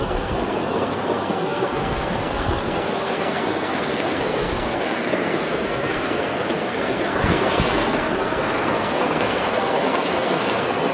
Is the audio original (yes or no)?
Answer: no